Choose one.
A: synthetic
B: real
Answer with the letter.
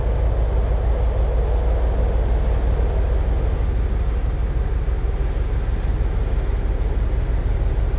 B